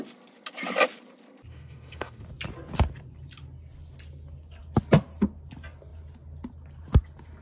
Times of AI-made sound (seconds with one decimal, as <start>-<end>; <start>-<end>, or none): 1.5-2.2